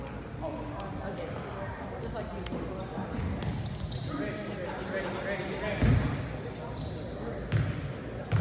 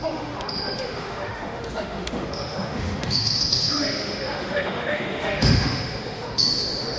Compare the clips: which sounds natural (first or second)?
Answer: first